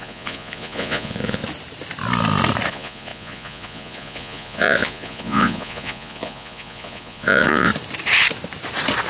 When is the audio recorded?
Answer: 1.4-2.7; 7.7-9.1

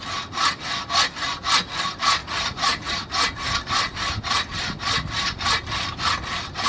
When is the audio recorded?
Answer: 0.0-2.2; 2.9-6.7

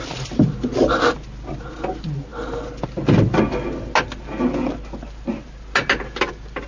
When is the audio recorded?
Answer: 0.0-6.7